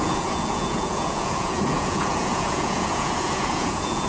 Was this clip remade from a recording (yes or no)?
yes